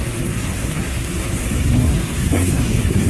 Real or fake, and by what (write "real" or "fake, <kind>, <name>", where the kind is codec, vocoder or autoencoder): fake, codec, SNAC